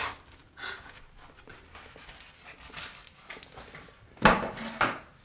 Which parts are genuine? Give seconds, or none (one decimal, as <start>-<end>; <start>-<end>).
0.0-0.4; 1.0-5.2